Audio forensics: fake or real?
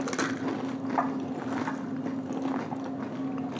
real